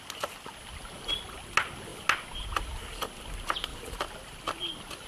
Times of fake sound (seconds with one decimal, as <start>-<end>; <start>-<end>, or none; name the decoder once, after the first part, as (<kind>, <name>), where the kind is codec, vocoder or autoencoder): 3.7-4.6 (vocoder, BigVGAN v2)